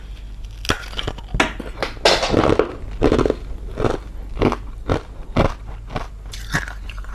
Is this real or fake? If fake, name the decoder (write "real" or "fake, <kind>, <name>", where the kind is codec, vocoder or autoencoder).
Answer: real